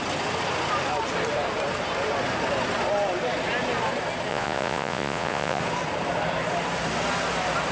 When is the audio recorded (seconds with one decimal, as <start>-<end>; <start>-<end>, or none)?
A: 0.0-4.3; 5.6-7.7